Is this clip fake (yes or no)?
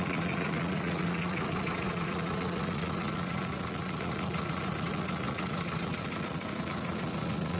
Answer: yes